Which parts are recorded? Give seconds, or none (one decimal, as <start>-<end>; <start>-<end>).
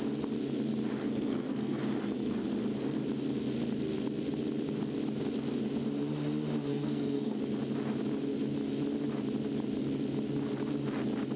0.0-1.0; 1.8-6.7; 7.4-11.4